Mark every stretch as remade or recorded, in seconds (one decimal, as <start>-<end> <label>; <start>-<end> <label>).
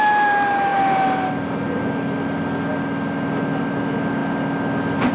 0.0-5.1 recorded